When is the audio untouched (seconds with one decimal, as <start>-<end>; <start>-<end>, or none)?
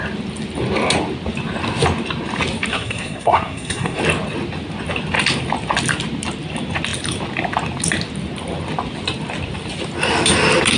0.0-2.7; 4.0-10.8